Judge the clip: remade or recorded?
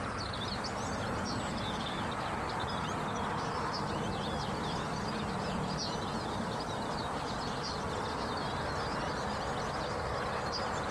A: recorded